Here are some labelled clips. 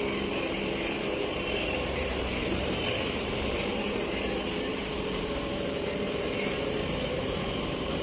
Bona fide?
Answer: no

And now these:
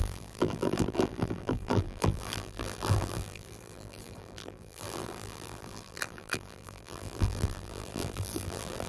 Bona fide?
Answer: no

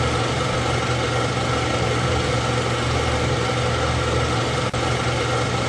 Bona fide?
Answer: yes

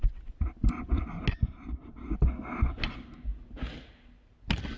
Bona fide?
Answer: yes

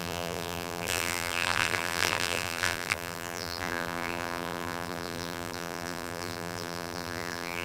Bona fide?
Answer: no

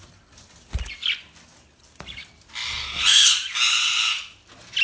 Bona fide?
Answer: yes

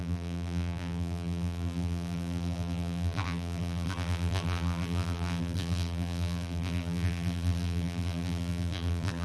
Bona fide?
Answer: no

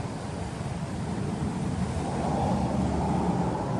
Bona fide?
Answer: yes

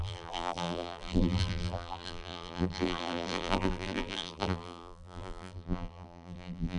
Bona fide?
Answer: no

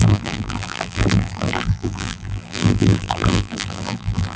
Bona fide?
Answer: no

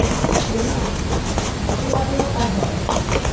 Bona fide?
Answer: yes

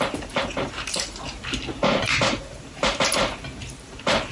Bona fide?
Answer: no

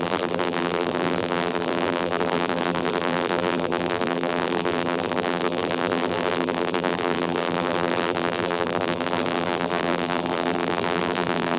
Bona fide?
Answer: no